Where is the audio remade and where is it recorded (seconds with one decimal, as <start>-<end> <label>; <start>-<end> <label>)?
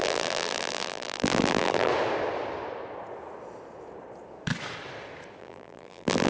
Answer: 0.0-1.9 remade; 1.9-5.4 recorded; 5.4-6.3 remade